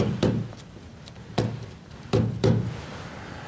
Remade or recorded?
remade